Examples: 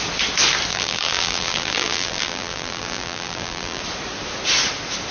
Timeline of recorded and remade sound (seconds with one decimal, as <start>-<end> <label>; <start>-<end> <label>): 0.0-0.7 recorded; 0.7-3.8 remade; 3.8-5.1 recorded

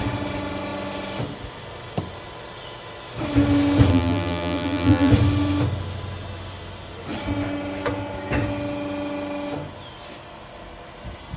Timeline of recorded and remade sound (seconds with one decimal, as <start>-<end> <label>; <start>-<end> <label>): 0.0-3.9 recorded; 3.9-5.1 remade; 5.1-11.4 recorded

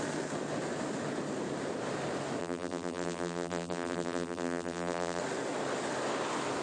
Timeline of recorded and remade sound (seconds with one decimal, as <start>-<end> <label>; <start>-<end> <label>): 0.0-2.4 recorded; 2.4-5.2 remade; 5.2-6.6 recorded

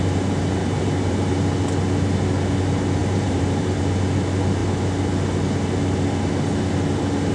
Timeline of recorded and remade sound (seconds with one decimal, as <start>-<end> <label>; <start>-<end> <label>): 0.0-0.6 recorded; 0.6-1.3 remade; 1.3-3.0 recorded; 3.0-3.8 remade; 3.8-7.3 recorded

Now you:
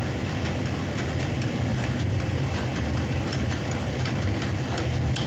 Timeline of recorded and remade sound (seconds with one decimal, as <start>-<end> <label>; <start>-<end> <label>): 0.0-1.7 recorded; 1.7-3.9 remade; 3.9-5.3 recorded

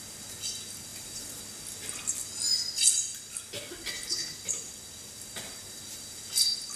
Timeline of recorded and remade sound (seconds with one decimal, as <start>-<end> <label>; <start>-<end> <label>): 0.0-0.9 recorded; 0.9-1.4 remade; 1.4-6.8 recorded